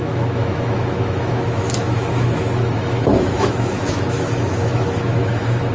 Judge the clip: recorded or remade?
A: remade